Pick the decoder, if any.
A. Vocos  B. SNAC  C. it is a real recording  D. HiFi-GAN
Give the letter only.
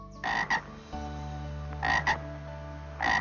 C